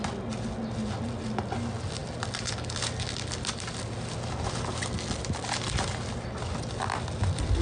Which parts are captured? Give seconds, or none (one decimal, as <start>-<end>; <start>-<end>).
0.0-7.6